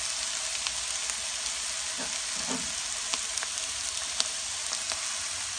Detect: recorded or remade recorded